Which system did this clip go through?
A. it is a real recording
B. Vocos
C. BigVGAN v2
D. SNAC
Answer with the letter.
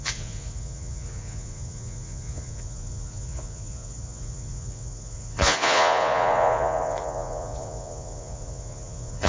B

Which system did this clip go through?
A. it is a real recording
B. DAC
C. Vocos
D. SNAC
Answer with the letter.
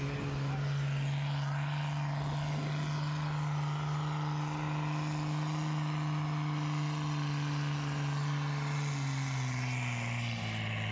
A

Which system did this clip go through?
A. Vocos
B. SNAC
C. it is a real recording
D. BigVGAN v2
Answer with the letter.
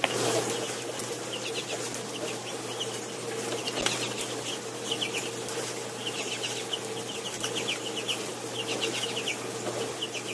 C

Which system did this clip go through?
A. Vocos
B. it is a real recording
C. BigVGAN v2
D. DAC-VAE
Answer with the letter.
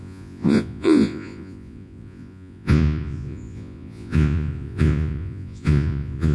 A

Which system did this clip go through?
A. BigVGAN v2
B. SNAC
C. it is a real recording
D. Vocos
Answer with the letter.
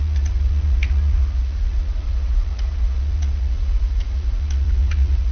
D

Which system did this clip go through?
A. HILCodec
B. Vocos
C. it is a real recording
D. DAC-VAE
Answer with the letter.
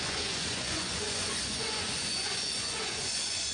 B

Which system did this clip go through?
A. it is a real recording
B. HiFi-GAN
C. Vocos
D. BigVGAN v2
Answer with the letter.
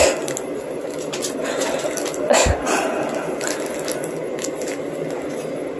A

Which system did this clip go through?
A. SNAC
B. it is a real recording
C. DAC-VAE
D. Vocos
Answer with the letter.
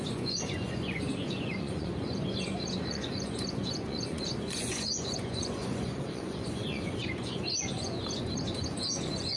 D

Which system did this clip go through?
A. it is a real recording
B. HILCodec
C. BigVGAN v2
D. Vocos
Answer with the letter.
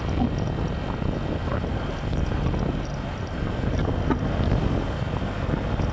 A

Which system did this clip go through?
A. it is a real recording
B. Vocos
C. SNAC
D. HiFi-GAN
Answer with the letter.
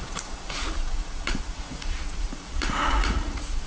B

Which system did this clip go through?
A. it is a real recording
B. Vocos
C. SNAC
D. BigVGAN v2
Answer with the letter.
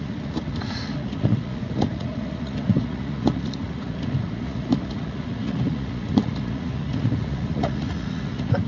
B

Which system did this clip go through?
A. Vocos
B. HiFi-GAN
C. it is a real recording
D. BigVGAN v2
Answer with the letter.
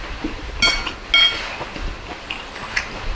C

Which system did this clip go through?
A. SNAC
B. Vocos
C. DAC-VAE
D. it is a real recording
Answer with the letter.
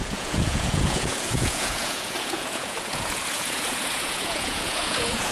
B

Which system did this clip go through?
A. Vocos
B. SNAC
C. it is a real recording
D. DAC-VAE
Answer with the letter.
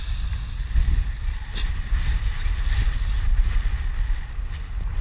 C